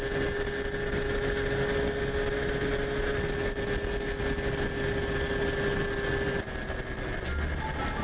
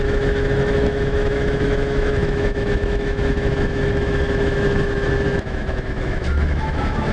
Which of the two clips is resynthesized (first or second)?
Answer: second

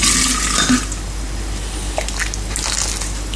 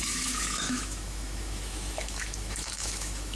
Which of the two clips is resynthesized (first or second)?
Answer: second